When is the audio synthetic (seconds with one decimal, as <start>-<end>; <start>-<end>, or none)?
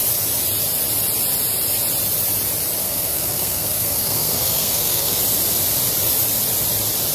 2.8-5.2